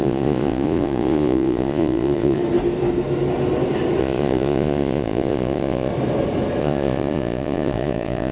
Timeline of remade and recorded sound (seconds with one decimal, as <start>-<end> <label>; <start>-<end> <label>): 0.0-2.4 remade; 2.4-4.0 recorded; 4.0-5.9 remade; 5.9-6.6 recorded; 6.6-8.3 remade

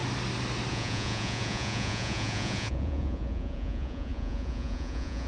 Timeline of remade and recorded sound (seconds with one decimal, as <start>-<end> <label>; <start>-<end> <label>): 0.0-0.7 recorded; 0.7-5.3 remade

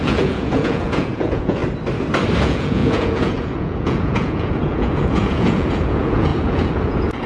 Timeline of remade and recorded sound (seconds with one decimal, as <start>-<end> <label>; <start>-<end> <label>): 0.0-1.6 remade; 1.6-2.4 recorded; 2.4-7.3 remade

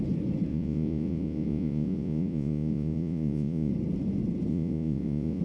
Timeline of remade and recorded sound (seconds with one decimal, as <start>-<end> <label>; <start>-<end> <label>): 0.0-0.5 recorded; 0.5-3.7 remade; 3.7-4.5 recorded; 4.5-5.4 remade

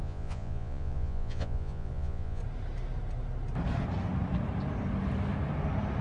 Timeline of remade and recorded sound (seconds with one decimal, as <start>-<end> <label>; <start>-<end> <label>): 0.0-2.4 remade; 2.4-6.0 recorded